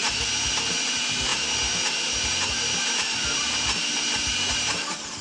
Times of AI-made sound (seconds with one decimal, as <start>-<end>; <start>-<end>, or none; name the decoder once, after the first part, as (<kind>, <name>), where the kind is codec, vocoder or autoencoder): none